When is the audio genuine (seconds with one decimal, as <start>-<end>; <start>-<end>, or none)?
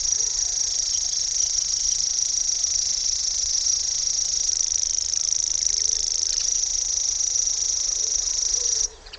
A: 4.5-6.4